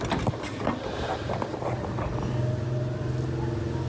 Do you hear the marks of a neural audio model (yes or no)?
no